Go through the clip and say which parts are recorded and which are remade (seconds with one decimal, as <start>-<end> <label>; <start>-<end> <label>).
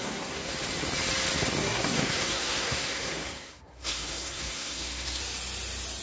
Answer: 0.0-0.5 remade; 0.5-1.6 recorded; 1.6-5.2 remade; 5.2-6.0 recorded